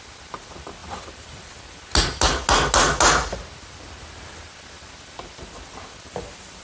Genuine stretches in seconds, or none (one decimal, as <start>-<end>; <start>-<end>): 0.0-6.6